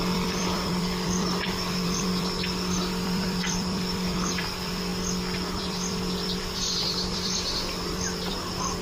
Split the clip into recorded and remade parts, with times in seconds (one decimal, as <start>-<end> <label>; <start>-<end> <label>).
0.0-4.9 remade; 4.9-5.5 recorded; 5.5-8.8 remade